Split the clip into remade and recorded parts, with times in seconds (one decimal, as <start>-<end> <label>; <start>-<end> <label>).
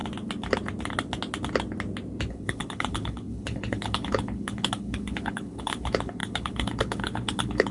0.0-2.3 recorded; 2.3-7.7 remade